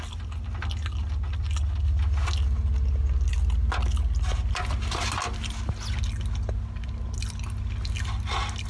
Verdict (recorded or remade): recorded